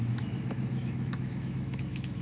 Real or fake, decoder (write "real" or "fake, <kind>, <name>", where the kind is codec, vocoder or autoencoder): fake, autoencoder, DAC-VAE